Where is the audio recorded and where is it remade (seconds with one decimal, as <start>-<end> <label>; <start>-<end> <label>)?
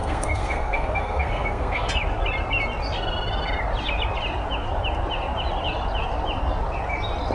0.0-1.9 remade; 1.9-7.3 recorded